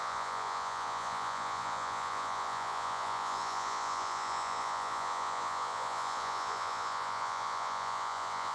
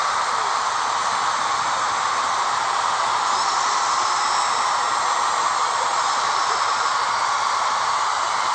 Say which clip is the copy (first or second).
first